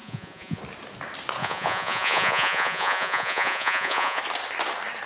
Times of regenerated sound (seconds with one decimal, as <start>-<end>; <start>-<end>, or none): 0.0-0.6; 1.4-4.2